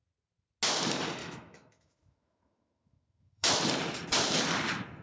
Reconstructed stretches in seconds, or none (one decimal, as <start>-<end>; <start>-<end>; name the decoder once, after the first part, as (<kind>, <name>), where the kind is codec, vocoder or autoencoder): 1.2-3.6 (autoencoder, DAC-VAE)

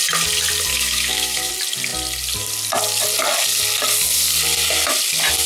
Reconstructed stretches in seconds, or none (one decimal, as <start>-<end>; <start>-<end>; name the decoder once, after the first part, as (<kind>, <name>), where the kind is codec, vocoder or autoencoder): 0.7-1.5 (autoencoder, DAC-VAE)

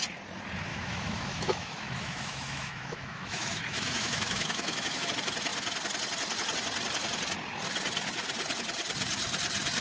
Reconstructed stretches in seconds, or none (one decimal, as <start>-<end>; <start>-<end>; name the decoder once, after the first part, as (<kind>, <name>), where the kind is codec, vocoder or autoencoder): 0.7-5.1 (autoencoder, DAC-VAE)

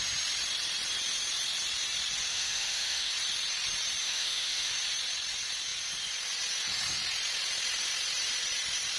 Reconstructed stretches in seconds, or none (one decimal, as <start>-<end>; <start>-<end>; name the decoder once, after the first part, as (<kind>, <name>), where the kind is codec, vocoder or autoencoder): 2.3-3.1 (autoencoder, DAC-VAE); 4.0-4.7